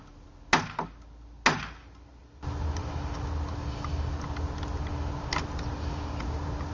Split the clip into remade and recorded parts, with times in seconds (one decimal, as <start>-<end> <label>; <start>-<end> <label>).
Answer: 0.0-6.7 recorded